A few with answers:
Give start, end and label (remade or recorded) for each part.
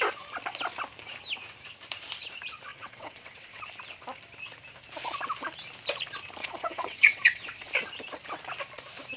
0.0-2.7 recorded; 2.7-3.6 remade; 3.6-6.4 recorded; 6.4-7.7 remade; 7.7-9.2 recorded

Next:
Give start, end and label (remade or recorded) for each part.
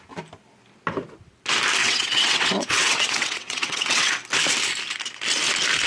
0.0-1.8 recorded; 1.8-4.1 remade; 4.1-5.9 recorded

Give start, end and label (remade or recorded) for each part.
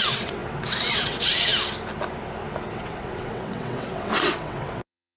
0.0-1.5 remade; 1.5-2.7 recorded; 2.7-5.2 remade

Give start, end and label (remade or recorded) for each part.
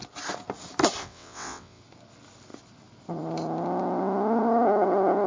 0.0-1.0 recorded; 1.0-1.8 remade; 1.8-5.3 recorded